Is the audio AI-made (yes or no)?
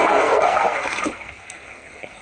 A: yes